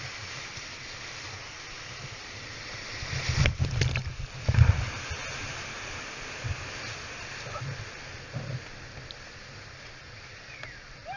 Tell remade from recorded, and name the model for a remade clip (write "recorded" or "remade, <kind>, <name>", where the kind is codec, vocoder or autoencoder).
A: recorded